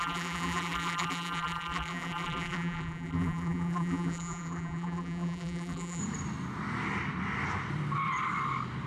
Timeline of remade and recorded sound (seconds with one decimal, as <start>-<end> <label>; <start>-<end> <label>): 0.0-6.0 remade; 6.0-8.9 recorded